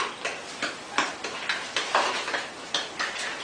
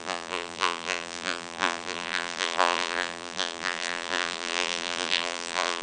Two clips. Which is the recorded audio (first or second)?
first